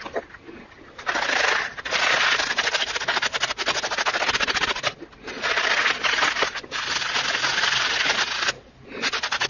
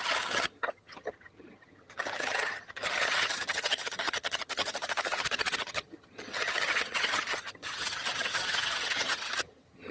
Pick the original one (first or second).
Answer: first